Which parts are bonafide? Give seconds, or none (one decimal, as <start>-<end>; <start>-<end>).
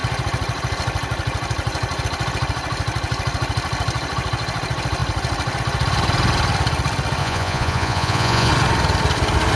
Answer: 0.0-7.2; 8.5-9.6